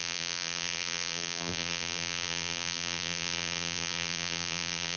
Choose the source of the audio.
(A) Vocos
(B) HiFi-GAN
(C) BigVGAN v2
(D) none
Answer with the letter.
C